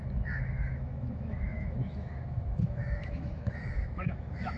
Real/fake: fake